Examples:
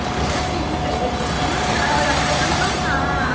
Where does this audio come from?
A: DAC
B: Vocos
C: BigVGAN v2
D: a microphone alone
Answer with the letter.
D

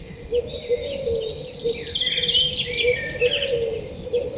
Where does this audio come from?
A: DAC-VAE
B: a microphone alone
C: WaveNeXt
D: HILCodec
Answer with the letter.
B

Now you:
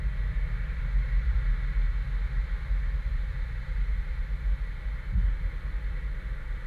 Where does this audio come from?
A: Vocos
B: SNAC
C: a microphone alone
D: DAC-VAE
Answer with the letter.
C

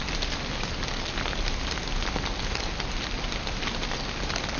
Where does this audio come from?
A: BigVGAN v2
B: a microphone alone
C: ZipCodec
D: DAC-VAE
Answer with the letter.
B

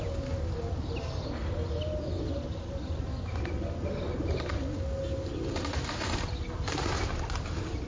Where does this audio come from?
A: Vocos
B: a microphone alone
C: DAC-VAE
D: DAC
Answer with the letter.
B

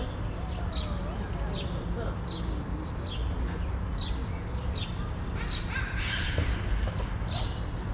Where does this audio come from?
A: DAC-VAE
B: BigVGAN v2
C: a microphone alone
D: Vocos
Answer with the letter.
C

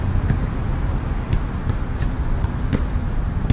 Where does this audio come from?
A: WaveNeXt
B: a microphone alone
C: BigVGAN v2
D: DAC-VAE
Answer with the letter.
B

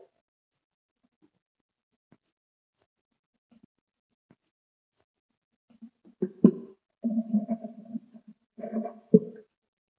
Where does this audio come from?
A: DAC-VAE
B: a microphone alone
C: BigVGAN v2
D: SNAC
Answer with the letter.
B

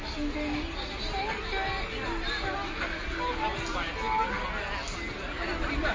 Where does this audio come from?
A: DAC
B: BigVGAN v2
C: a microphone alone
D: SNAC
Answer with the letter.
C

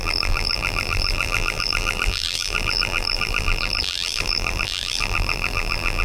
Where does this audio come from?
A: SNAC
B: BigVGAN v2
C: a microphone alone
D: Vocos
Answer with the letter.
B